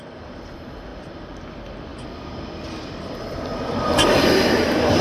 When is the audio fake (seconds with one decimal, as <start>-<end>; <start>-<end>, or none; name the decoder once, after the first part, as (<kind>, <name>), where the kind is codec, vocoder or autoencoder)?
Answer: 1.9-4.2 (vocoder, BigVGAN v2)

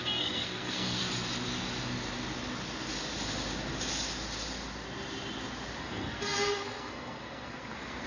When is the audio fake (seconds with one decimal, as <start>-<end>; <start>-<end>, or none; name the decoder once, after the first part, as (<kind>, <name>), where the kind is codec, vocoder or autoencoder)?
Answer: 0.0-1.0 (codec, SNAC); 5.8-8.1

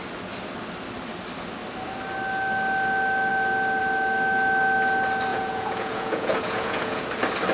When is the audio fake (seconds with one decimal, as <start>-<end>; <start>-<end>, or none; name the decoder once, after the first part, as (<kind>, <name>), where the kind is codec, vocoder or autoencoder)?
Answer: 5.3-7.0 (vocoder, Vocos)

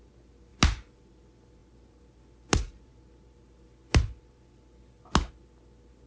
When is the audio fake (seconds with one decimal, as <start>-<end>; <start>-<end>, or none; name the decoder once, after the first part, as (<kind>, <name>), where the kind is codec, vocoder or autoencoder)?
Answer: none